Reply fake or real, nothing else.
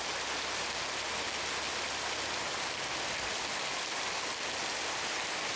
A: real